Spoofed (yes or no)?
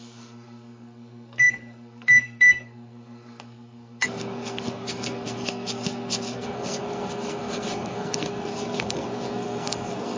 yes